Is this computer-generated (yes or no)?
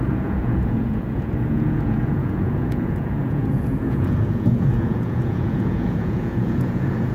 yes